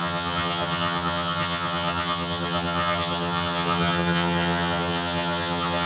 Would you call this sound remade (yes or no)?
yes